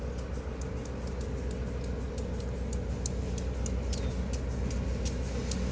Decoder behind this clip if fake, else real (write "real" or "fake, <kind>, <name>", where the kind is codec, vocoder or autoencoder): real